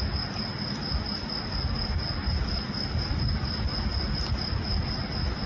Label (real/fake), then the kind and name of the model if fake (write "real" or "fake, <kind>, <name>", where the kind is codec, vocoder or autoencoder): real